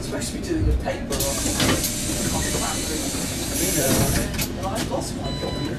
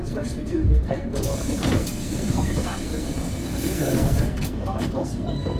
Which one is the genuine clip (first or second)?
first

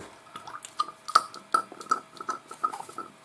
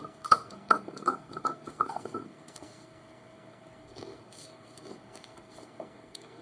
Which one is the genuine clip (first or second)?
first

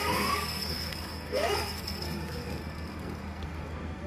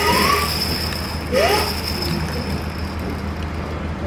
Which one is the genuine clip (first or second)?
second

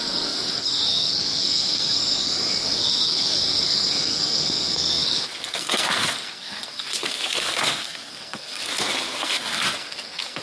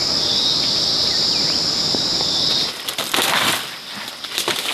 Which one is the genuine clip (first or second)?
second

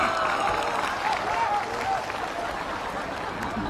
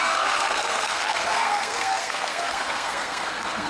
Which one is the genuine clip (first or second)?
first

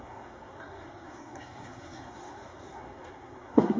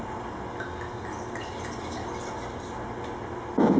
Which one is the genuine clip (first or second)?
second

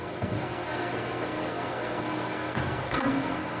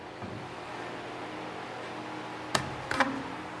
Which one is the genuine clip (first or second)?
second